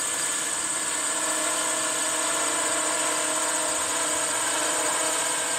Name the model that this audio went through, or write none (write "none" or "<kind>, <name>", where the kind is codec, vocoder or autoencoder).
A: none